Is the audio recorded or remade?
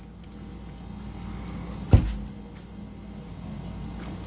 recorded